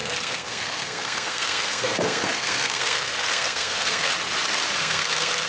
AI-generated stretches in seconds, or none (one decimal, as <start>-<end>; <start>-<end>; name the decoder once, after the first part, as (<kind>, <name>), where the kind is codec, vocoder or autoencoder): 0.0-4.1 (codec, SNAC); 4.8-5.5